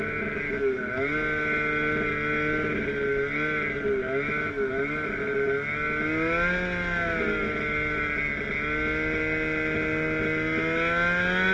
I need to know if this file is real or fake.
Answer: real